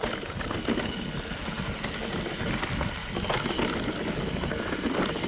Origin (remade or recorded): recorded